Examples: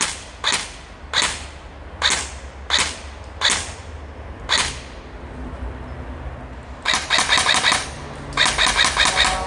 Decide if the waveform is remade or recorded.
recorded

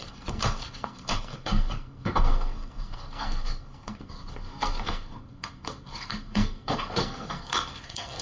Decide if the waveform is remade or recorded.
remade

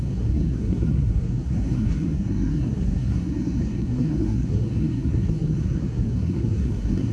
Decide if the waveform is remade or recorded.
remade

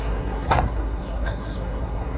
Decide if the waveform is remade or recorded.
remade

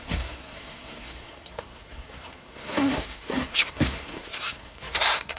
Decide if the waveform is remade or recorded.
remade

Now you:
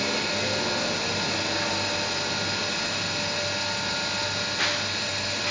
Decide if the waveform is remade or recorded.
recorded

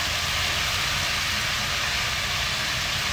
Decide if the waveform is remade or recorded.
recorded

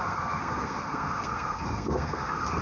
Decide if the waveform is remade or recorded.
remade